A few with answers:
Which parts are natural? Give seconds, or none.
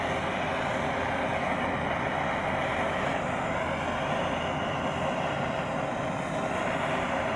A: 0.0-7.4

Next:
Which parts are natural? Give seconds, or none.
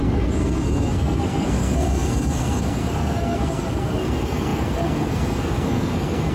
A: none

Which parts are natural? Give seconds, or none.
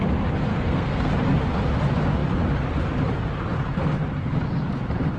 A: 0.0-0.5; 1.1-5.2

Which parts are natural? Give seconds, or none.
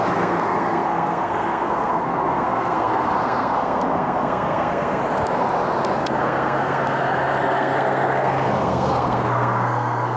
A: 5.0-6.2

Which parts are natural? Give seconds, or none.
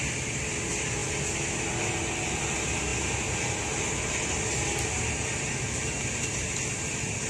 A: 0.0-7.3